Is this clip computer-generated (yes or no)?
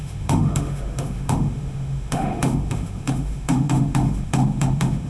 yes